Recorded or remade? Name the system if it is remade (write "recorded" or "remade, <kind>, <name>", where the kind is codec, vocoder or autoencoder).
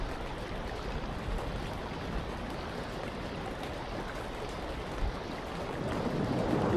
recorded